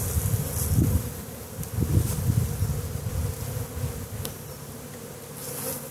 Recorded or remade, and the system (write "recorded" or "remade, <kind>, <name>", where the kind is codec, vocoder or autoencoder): recorded